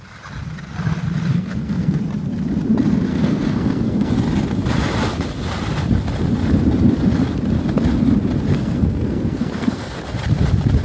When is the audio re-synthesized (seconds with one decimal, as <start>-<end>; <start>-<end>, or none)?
1.3-2.0; 3.1-4.1; 8.5-10.0